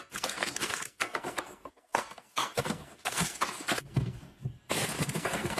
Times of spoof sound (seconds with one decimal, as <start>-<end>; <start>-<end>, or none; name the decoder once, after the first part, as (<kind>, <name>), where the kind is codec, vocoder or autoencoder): 0.0-5.6 (codec, SNAC)